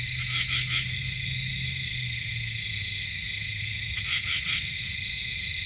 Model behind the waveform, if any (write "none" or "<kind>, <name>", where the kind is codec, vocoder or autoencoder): autoencoder, DAC-VAE